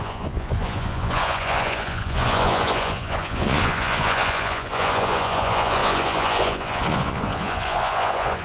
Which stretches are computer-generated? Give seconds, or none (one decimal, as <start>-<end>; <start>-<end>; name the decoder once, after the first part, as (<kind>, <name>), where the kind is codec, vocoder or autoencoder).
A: 0.0-8.4 (vocoder, Vocos)